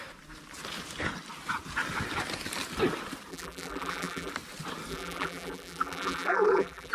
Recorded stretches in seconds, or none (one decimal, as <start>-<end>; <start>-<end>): 0.0-3.3; 4.3-4.9

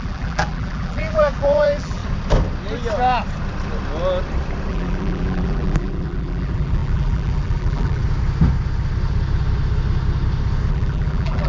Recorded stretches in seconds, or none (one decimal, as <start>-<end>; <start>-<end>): 2.0-4.7; 8.0-10.7

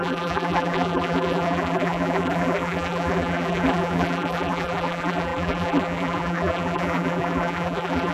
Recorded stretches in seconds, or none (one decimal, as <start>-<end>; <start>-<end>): none

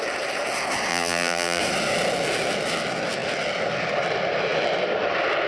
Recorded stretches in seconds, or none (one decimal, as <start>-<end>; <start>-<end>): 0.0-0.9; 1.6-5.5

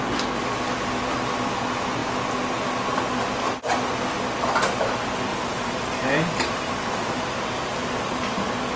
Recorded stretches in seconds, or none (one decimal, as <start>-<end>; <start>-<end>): 0.0-5.3; 7.2-8.8

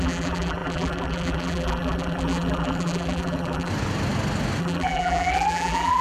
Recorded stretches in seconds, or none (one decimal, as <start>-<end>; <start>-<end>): 3.7-4.6